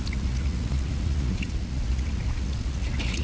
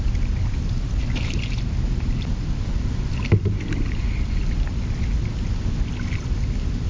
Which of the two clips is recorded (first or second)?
second